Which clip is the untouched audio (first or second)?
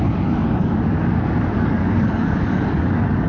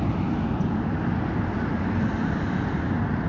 second